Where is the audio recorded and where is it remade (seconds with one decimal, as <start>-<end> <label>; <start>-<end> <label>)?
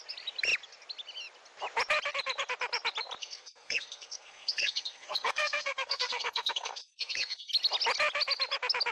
0.0-3.2 recorded; 3.2-7.5 remade; 7.5-8.9 recorded